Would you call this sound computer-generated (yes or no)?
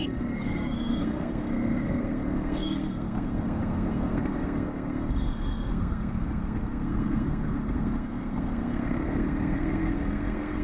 yes